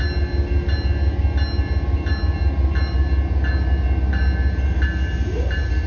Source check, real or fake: real